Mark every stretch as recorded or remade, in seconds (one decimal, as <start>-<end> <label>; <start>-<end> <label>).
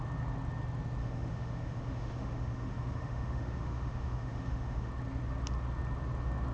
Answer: 0.0-1.0 recorded; 1.0-4.9 remade; 4.9-6.5 recorded